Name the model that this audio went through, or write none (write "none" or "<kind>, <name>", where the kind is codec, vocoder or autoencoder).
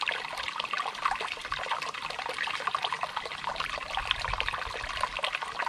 none